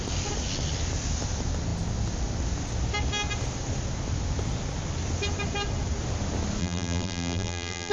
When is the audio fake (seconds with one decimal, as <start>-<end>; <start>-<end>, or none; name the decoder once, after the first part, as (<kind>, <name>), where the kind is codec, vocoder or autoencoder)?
6.6-7.9 (vocoder, BigVGAN v2)